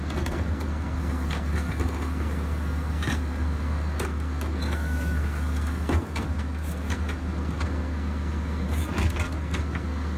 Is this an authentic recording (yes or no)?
no